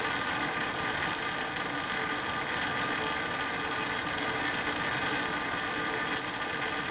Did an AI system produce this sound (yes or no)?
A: no